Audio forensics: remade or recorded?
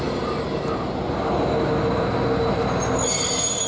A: recorded